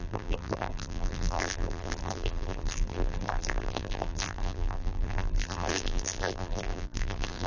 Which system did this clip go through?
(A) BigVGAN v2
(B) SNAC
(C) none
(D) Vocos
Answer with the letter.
A